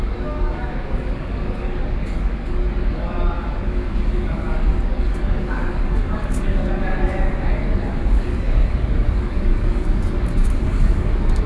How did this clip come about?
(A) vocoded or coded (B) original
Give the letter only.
A